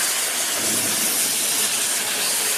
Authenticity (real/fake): real